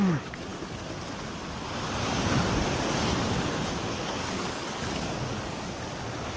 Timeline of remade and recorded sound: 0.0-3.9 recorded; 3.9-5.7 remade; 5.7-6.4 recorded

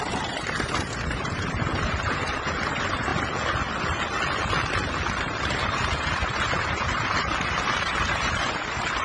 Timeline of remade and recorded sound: 0.0-3.1 remade; 3.1-5.2 recorded; 5.2-9.0 remade